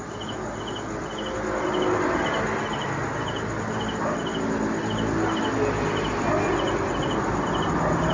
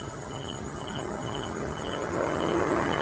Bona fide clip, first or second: first